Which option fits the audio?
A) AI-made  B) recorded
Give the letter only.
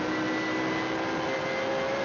B